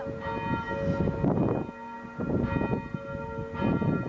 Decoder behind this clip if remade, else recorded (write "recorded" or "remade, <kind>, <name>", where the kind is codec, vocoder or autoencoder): recorded